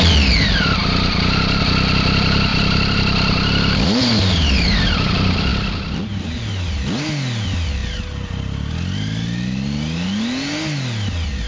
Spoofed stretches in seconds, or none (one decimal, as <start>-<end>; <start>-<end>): 0.8-1.6; 2.5-5.1